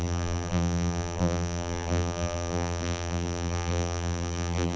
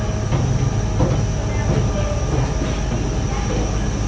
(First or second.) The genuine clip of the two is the second